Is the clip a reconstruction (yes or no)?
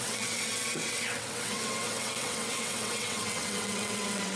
yes